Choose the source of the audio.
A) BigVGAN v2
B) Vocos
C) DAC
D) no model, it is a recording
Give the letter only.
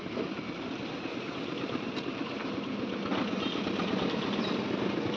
D